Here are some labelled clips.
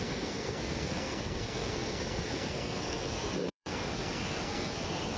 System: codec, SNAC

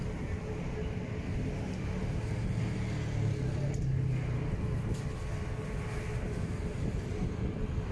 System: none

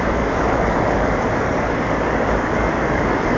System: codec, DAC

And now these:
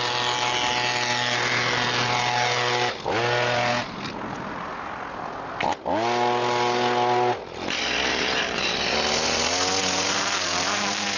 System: none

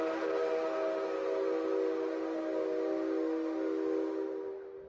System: none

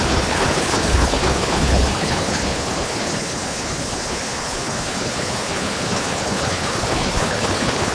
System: codec, HILCodec